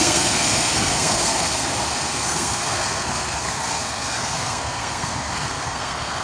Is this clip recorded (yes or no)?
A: no